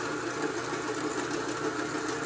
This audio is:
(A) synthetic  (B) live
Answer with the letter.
B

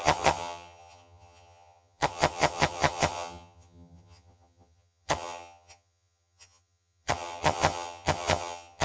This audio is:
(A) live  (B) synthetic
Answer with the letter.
B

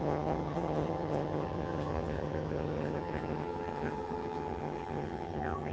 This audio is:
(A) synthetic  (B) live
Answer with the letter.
A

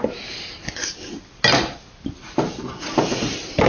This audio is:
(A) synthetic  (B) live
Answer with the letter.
B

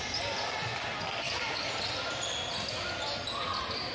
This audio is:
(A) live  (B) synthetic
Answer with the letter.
A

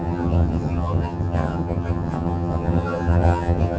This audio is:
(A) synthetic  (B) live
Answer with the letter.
A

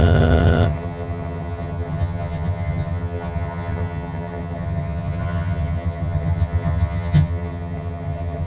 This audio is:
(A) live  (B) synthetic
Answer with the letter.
B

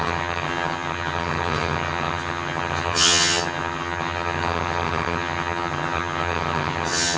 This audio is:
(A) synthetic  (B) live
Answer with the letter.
A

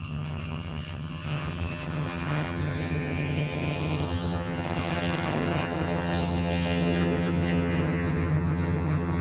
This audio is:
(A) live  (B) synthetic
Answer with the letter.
B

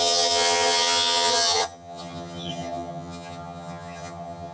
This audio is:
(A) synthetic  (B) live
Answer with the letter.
A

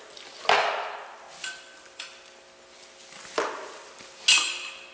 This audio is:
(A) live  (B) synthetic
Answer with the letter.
A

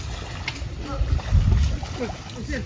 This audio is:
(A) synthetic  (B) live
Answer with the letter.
B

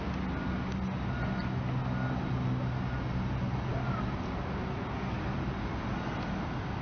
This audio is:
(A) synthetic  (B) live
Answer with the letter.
B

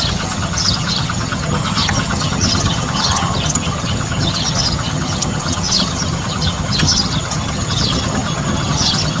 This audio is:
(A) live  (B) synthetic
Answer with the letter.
B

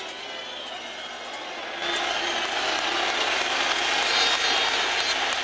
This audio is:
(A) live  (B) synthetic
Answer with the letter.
A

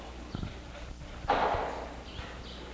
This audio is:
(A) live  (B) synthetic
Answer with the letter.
A